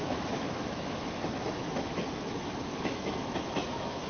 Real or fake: fake